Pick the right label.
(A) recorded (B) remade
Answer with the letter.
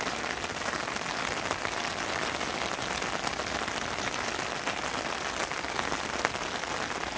A